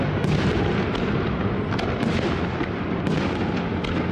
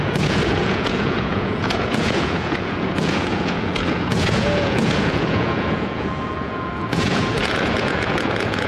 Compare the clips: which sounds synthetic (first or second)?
second